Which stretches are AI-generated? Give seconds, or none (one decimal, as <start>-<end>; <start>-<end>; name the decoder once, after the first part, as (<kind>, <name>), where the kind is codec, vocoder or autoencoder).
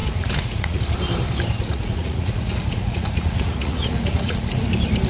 0.0-0.8 (vocoder, Vocos); 1.7-4.6